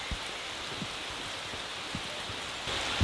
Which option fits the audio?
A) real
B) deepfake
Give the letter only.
A